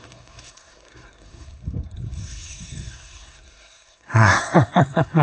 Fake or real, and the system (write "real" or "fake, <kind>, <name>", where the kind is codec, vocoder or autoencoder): fake, codec, SNAC